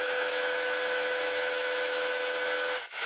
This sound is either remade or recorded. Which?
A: remade